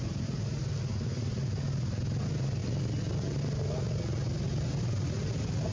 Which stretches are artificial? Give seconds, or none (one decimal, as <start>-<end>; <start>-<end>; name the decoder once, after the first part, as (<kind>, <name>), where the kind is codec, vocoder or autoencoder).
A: none

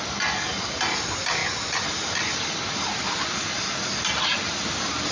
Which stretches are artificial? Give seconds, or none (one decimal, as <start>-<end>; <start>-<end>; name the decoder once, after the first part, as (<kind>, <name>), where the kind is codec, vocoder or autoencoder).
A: none

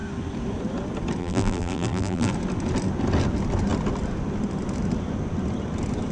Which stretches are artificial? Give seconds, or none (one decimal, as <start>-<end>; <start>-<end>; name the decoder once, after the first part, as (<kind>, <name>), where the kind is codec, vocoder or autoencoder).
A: 1.2-2.3 (vocoder, BigVGAN v2)

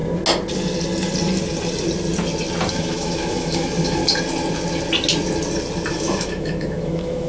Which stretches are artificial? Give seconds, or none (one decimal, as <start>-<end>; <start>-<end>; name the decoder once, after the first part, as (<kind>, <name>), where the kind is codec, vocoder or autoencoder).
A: 2.7-4.0 (autoencoder, DAC-VAE); 5.9-7.3

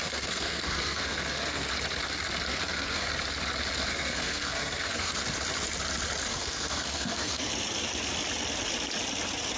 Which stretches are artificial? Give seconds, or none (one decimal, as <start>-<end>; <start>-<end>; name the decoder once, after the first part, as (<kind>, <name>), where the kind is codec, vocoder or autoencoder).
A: 0.0-1.7 (codec, SNAC); 2.5-3.1; 3.9-5.2; 6.3-7.5

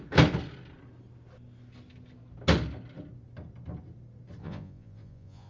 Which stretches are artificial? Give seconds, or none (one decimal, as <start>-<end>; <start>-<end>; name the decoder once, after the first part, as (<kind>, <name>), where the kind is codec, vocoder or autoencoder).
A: 4.4-5.5 (vocoder, Vocos)

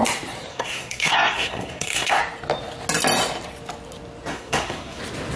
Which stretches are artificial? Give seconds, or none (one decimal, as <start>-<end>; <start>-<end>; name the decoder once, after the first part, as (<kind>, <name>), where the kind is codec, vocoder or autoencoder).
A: 0.5-2.2 (codec, SNAC); 4.3-5.0